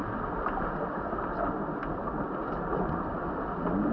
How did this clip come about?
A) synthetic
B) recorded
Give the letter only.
B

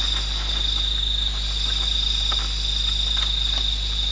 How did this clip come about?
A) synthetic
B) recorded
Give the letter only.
B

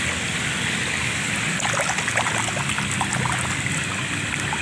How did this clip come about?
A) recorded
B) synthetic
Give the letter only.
A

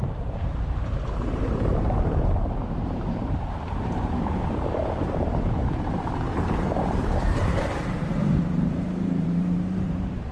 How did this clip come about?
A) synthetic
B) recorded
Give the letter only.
A